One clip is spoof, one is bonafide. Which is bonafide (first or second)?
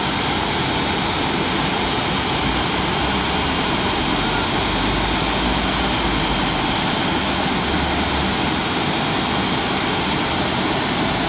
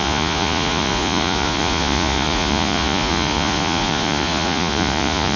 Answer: first